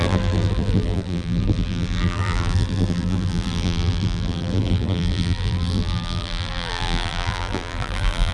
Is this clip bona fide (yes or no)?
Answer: no